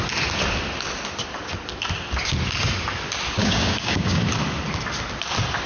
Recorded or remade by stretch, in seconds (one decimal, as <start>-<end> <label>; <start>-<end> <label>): 0.0-3.4 recorded; 3.4-4.2 remade; 4.2-5.7 recorded